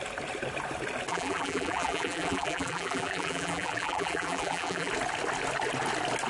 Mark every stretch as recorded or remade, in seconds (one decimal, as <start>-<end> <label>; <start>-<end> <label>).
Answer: 0.0-1.1 recorded; 1.1-4.9 remade; 4.9-6.3 recorded